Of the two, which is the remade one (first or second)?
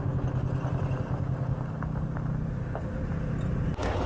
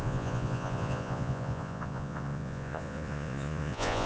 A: second